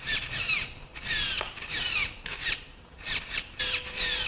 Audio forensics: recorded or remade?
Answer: remade